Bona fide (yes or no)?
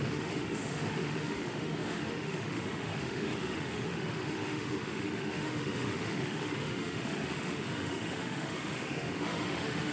no